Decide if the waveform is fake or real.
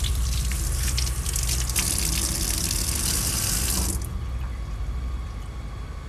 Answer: real